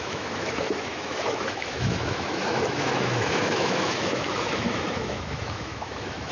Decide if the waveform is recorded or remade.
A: remade